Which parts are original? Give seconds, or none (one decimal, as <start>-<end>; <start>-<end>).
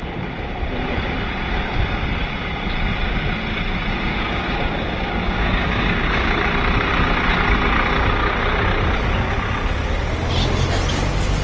0.0-4.1; 6.4-11.4